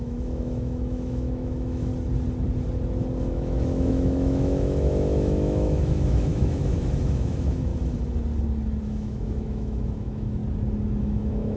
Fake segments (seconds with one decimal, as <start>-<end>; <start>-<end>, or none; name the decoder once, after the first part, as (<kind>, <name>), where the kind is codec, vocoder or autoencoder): 0.0-1.9 (autoencoder, DAC-VAE); 3.2-7.7; 8.8-10.4; 11.0-11.6